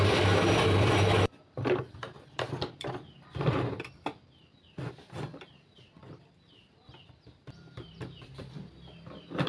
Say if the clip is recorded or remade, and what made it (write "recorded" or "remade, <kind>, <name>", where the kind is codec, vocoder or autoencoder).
remade, vocoder, BigVGAN v2